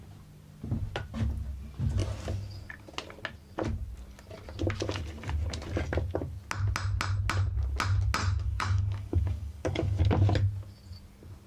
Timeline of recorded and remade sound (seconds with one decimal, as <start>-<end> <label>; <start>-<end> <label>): 0.0-8.2 recorded; 8.2-10.0 remade; 10.0-11.5 recorded